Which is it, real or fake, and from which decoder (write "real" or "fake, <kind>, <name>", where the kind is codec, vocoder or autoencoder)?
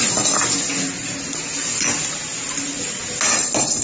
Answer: real